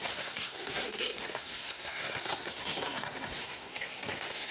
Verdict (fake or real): fake